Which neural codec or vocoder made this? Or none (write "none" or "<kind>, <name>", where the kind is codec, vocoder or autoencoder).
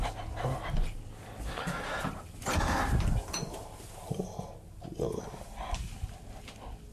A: none